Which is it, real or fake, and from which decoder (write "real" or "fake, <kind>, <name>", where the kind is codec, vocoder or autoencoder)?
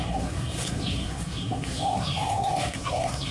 fake, codec, SNAC